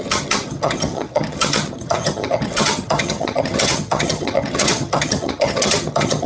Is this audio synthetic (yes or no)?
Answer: yes